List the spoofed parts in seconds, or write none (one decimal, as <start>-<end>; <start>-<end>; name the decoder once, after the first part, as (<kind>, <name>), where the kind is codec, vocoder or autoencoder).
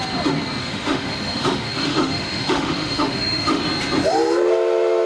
0.6-3.6 (autoencoder, DAC-VAE)